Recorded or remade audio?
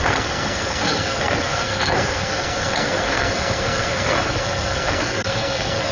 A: remade